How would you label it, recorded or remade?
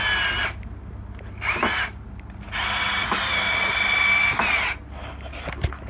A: recorded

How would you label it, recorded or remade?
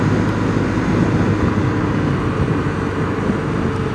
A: recorded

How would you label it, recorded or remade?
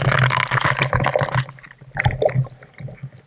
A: recorded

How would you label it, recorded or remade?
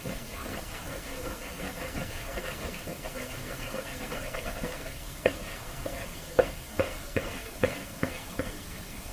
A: remade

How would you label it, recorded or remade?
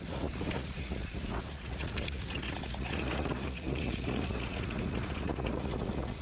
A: remade